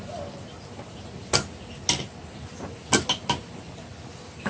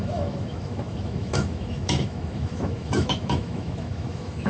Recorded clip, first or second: first